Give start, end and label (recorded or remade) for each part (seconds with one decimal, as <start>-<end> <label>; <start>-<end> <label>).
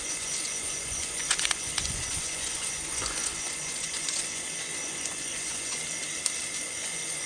0.0-5.8 remade; 5.8-6.6 recorded; 6.6-7.3 remade